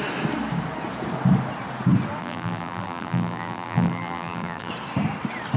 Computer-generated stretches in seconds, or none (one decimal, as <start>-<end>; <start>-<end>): 2.2-4.7

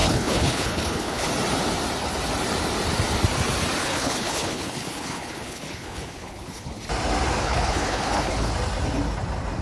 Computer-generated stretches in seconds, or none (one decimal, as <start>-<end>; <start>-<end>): 0.0-1.3; 3.8-6.8; 7.4-8.5

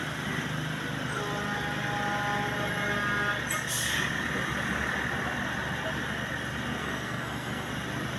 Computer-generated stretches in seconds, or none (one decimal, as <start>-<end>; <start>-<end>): 6.8-7.7

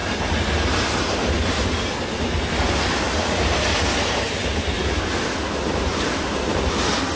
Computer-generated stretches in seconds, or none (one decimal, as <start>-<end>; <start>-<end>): 0.0-1.6; 5.9-6.6

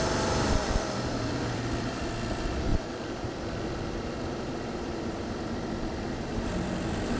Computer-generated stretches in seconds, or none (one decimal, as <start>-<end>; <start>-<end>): 0.6-2.0; 2.7-7.2

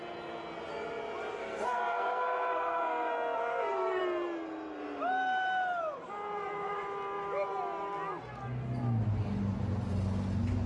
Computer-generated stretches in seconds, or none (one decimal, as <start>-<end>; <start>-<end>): 1.3-4.0

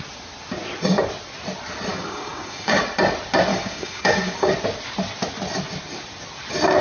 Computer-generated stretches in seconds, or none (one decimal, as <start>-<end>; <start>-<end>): 1.9-2.8; 3.5-4.5